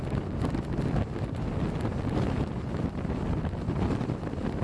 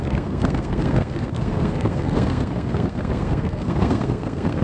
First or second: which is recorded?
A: first